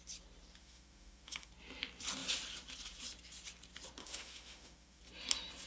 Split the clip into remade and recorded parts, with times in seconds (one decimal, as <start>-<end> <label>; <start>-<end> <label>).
0.0-0.6 recorded; 0.6-1.5 remade; 1.5-4.0 recorded; 4.0-5.0 remade; 5.0-5.7 recorded